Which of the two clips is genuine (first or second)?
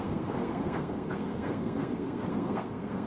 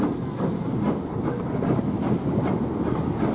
second